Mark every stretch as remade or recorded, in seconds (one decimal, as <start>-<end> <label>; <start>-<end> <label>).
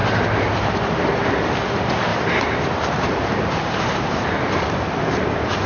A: 0.0-2.1 recorded; 2.1-5.7 remade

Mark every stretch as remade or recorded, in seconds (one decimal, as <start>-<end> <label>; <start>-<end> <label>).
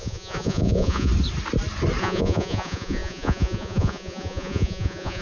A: 0.0-1.1 remade; 1.1-2.0 recorded; 2.0-5.2 remade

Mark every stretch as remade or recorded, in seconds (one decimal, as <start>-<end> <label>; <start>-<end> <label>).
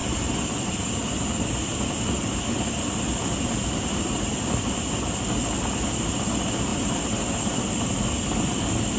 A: 0.0-4.8 remade; 4.8-9.0 recorded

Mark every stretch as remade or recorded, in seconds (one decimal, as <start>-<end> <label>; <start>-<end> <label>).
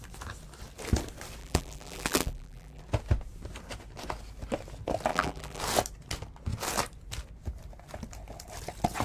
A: 0.0-1.4 recorded; 1.4-2.8 remade; 2.8-5.1 recorded; 5.1-5.6 remade; 5.6-9.0 recorded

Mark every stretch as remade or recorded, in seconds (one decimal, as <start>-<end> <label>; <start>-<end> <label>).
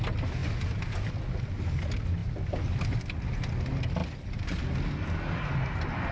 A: 0.0-4.0 recorded; 4.0-4.6 remade; 4.6-6.1 recorded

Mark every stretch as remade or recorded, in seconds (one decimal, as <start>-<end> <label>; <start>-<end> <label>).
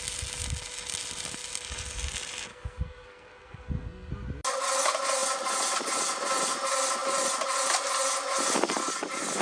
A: 0.0-2.5 recorded; 2.5-4.1 remade; 4.1-9.4 recorded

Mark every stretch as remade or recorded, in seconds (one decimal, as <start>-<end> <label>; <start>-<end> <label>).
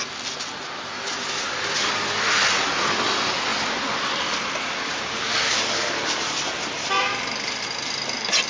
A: 0.0-8.5 recorded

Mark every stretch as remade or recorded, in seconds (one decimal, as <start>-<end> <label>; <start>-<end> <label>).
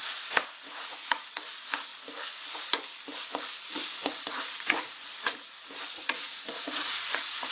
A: 0.0-1.9 remade; 1.9-4.3 recorded; 4.3-7.5 remade